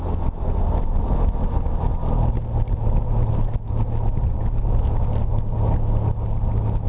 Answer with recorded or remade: recorded